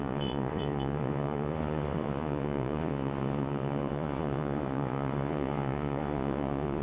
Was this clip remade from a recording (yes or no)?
yes